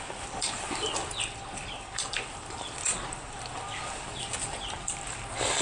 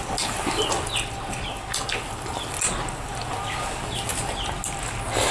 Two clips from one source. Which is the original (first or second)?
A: second